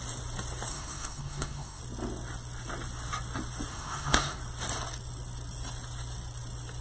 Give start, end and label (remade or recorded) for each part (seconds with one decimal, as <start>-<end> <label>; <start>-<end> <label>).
0.0-0.7 recorded; 0.7-1.8 remade; 1.8-3.7 recorded; 3.7-4.4 remade; 4.4-6.8 recorded